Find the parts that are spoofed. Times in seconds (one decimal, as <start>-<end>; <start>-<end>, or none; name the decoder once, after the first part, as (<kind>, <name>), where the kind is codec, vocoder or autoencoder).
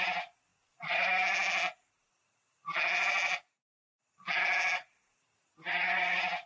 none